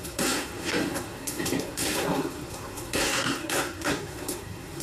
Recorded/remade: remade